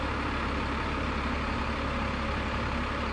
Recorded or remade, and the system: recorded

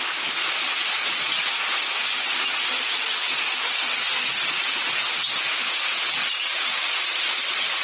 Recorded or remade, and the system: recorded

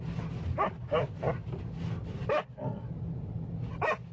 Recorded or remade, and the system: recorded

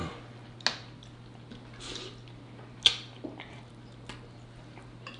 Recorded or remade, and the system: recorded